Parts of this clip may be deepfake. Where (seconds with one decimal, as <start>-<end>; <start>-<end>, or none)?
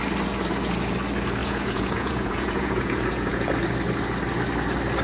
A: 1.4-3.5